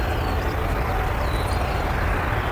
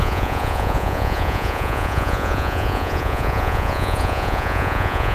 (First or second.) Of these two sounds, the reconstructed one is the second